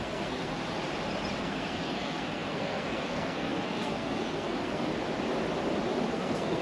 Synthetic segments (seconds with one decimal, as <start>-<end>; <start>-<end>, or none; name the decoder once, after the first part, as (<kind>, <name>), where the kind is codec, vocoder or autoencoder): 0.0-0.6 (codec, SNAC); 1.4-4.9; 6.1-6.6